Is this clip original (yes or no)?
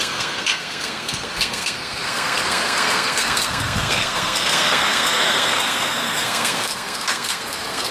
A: no